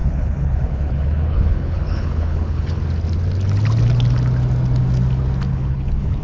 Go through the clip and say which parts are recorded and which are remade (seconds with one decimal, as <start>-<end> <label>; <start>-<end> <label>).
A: 0.0-2.8 remade; 2.8-5.5 recorded; 5.5-6.2 remade